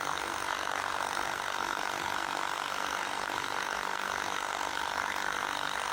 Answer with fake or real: fake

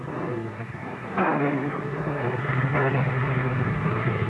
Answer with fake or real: fake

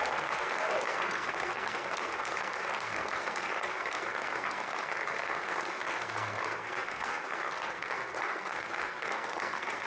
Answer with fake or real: fake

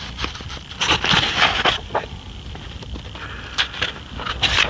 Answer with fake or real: real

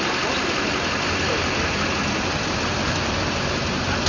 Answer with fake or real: real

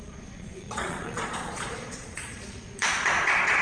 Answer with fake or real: fake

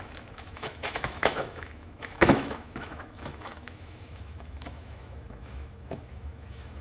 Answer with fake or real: fake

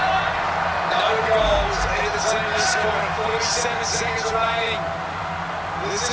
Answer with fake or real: real